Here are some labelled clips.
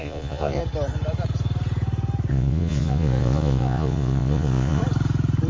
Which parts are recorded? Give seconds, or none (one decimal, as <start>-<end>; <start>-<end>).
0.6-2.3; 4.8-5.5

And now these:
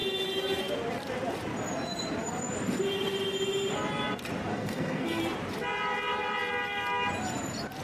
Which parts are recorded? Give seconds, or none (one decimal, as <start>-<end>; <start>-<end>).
0.0-4.5; 5.2-7.8

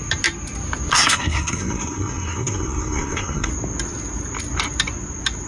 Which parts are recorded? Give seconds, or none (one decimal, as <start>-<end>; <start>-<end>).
0.0-0.9; 3.5-5.5

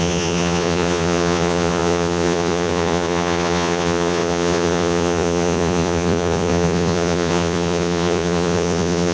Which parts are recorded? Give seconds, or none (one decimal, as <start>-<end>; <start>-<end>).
none

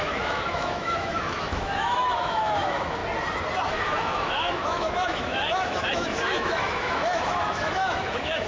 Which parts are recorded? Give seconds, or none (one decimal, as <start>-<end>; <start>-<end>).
3.0-3.7

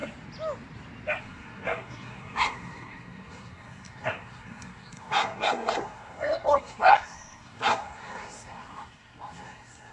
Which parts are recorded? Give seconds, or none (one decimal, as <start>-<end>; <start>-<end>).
0.0-1.2

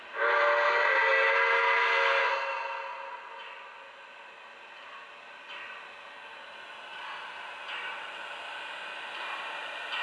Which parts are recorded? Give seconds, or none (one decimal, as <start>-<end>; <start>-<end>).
0.0-10.0